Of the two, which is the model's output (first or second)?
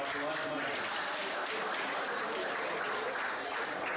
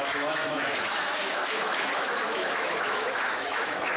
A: second